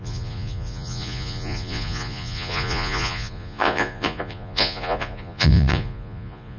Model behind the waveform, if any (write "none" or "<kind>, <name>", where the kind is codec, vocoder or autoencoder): vocoder, Vocos